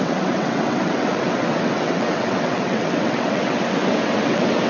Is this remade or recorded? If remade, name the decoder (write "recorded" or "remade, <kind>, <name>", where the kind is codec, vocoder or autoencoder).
remade, vocoder, WaveNeXt